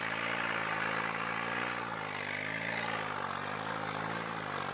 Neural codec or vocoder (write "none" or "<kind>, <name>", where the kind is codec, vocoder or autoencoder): none